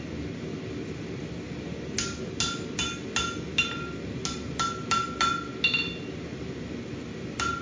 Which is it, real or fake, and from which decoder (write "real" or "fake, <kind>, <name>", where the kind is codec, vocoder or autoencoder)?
real